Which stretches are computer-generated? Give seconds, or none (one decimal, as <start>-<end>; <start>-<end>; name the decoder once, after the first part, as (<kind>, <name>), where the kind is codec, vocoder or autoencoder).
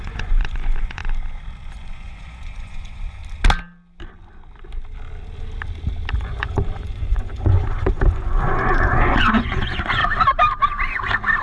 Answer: 0.0-1.0 (vocoder, Vocos); 1.7-3.2; 6.1-10.0